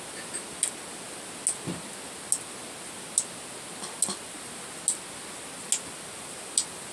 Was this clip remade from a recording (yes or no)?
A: no